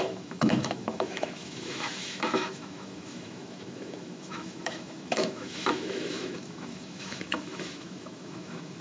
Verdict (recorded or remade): remade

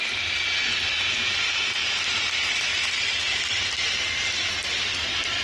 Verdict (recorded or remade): recorded